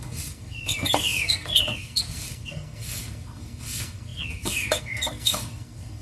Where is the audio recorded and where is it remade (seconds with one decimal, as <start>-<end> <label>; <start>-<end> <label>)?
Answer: 0.0-6.0 remade